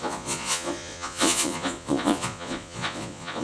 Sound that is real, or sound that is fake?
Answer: fake